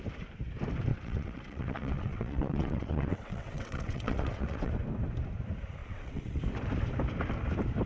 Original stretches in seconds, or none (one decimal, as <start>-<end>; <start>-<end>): 0.0-0.9; 4.7-5.8; 6.4-7.9